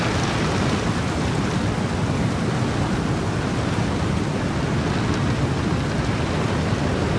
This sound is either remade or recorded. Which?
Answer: recorded